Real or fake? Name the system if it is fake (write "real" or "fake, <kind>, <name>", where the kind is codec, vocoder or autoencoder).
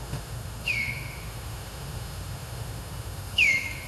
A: fake, autoencoder, DAC-VAE